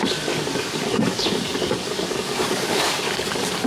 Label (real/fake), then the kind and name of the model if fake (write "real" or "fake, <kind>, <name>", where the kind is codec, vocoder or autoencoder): fake, codec, DAC